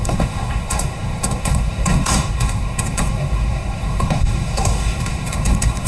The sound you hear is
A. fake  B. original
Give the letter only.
A